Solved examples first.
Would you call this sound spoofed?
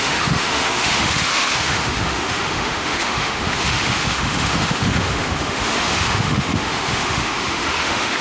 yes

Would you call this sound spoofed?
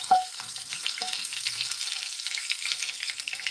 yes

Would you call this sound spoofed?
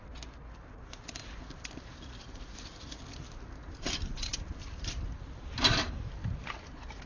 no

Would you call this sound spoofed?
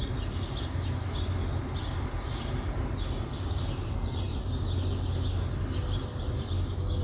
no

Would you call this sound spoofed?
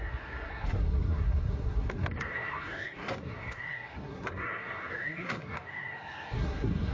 yes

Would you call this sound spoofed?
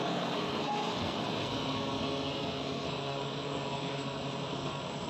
yes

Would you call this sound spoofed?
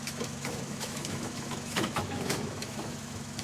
yes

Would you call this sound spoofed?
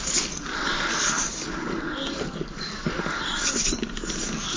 yes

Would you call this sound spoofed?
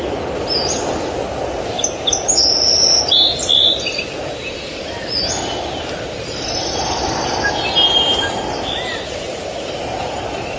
no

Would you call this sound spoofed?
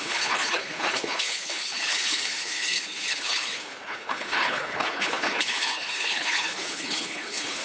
yes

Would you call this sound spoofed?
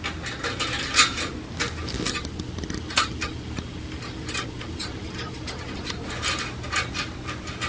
no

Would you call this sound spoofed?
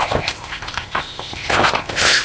yes